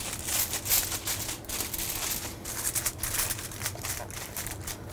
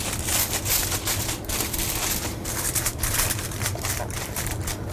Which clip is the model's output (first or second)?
second